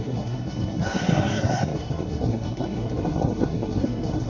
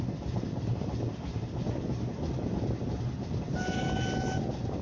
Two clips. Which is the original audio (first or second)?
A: second